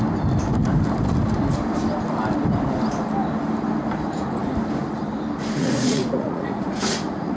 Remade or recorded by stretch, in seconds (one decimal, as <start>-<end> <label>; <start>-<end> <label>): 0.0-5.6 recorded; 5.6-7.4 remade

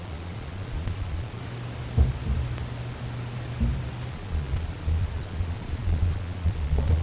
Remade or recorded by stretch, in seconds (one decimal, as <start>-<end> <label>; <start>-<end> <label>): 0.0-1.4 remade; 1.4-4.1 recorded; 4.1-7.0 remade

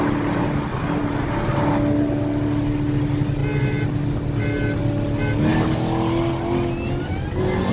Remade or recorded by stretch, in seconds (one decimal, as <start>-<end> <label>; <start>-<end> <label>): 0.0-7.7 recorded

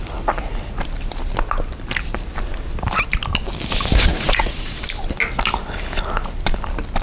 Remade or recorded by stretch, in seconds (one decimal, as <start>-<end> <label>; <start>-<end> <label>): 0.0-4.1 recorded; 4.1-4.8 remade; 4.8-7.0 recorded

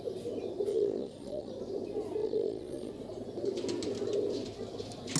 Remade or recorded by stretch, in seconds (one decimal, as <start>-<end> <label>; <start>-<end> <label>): 0.0-0.7 recorded; 0.7-1.5 remade; 1.5-2.2 recorded; 2.2-2.9 remade; 2.9-5.2 recorded

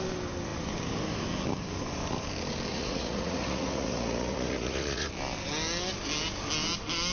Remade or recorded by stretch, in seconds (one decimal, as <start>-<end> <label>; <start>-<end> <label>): 0.0-2.7 recorded; 2.7-5.1 remade; 5.1-7.1 recorded

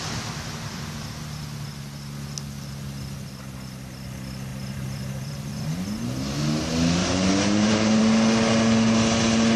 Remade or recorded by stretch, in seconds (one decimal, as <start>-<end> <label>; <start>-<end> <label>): 0.0-4.5 recorded; 4.5-5.5 remade; 5.5-7.0 recorded; 7.0-8.0 remade; 8.0-9.6 recorded

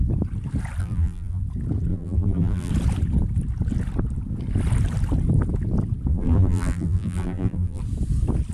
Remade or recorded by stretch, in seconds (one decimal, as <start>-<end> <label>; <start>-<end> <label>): 0.0-0.8 recorded; 0.8-1.4 remade; 1.4-1.9 recorded; 1.9-2.7 remade; 2.7-6.1 recorded; 6.1-7.8 remade; 7.8-8.5 recorded